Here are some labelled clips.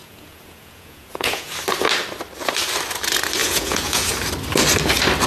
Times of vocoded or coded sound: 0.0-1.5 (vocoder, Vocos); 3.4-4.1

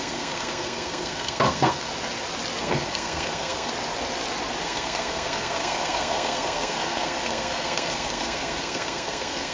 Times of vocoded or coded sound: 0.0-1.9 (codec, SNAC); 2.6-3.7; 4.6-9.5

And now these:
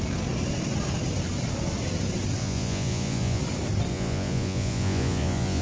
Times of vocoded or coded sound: 2.4-3.4 (vocoder, Vocos); 3.9-5.6